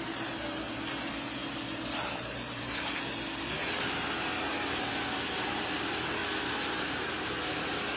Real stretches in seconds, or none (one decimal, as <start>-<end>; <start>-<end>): 0.0-8.0